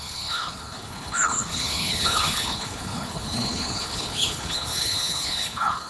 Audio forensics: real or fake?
fake